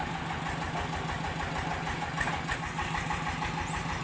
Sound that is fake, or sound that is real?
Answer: real